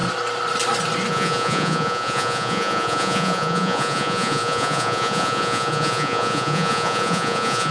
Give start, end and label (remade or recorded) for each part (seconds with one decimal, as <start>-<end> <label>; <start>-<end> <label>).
0.0-1.1 recorded; 1.1-7.7 remade